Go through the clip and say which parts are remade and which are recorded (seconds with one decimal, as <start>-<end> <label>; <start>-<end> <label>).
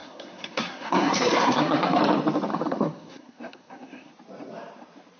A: 0.0-2.0 remade; 2.0-2.5 recorded; 2.5-4.1 remade; 4.1-5.2 recorded